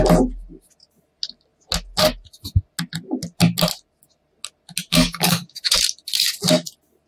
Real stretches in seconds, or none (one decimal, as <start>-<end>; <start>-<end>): 0.0-4.9; 5.6-7.1